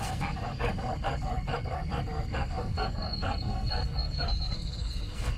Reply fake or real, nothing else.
fake